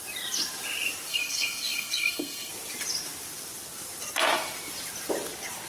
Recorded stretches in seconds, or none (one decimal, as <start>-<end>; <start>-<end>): 0.0-1.1; 2.5-5.7